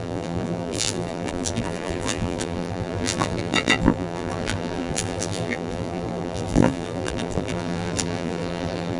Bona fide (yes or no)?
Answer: no